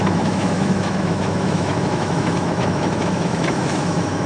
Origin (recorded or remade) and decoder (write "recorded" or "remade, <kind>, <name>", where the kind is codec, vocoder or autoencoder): remade, autoencoder, DAC-VAE